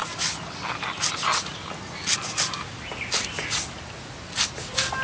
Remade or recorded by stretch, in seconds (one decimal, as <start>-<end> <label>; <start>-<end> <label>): 0.0-5.0 recorded